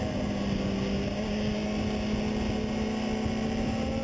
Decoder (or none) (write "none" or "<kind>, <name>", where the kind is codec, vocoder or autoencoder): none